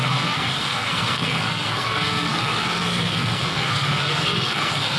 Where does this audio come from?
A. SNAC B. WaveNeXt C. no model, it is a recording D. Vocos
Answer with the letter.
A